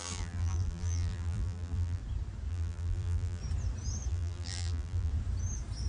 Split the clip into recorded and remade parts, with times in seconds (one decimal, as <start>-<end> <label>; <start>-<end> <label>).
0.0-2.0 remade; 2.0-2.5 recorded; 2.5-3.4 remade; 3.4-4.1 recorded; 4.1-5.1 remade; 5.1-5.9 recorded